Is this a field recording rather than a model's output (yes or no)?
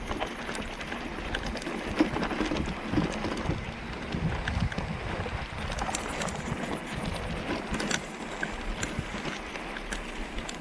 yes